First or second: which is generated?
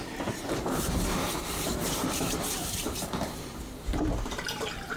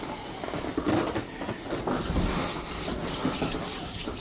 first